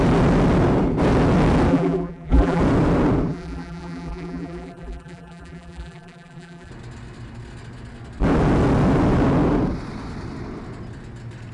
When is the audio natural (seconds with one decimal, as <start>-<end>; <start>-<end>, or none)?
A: 0.0-1.7; 2.6-3.3; 6.7-11.5